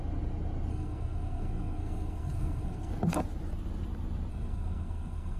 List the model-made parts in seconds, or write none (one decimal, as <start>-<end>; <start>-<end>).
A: 0.7-2.9; 4.3-5.4